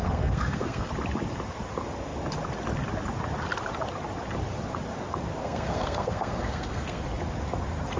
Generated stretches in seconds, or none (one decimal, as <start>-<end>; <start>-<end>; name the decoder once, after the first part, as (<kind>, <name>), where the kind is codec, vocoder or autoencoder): 0.0-0.9 (codec, SNAC); 5.4-7.0